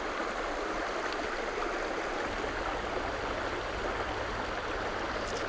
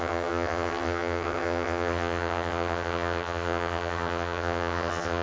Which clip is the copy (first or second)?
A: second